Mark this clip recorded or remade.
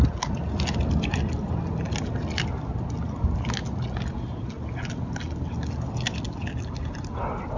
recorded